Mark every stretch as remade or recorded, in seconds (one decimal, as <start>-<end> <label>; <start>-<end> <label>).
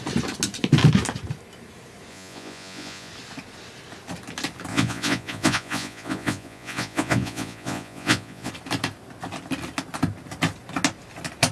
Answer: 0.0-2.1 recorded; 2.1-3.1 remade; 3.1-4.7 recorded; 4.7-8.5 remade; 8.5-11.5 recorded